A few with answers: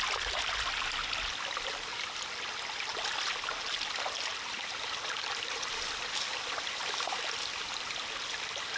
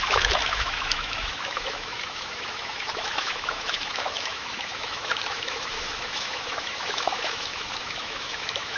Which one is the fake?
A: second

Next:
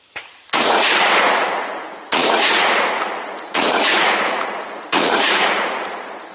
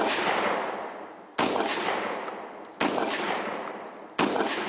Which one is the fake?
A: first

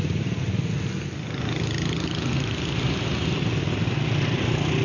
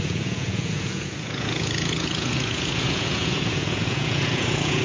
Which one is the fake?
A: second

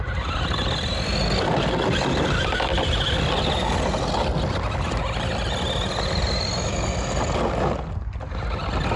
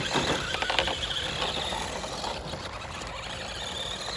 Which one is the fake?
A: second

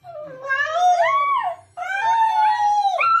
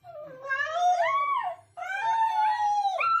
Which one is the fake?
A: second